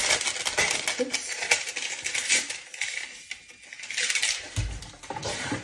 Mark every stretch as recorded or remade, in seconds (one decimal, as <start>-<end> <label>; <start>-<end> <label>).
0.0-0.6 recorded; 0.6-1.7 remade; 1.7-5.1 recorded; 5.1-5.6 remade